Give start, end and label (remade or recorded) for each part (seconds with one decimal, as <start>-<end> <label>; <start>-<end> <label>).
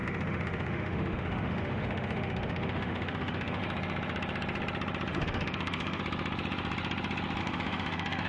0.0-3.6 remade; 3.6-5.1 recorded; 5.1-6.0 remade; 6.0-7.4 recorded; 7.4-8.3 remade